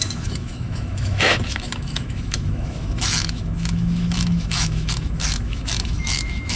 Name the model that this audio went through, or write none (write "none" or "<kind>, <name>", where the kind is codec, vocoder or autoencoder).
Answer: autoencoder, DAC-VAE